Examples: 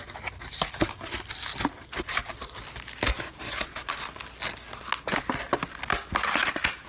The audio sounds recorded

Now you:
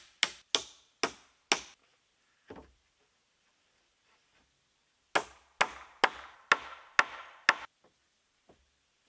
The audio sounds recorded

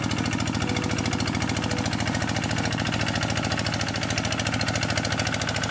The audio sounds recorded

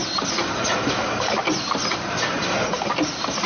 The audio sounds recorded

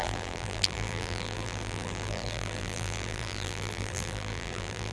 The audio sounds remade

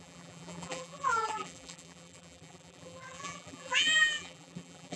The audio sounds remade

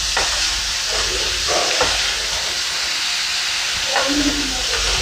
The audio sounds remade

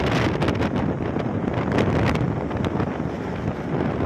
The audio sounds recorded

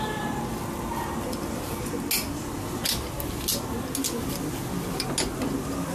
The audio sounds recorded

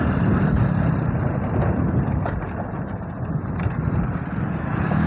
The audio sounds recorded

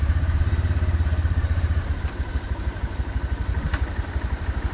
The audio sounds remade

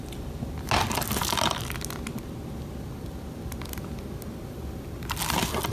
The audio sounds recorded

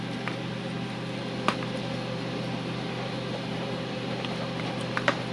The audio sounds remade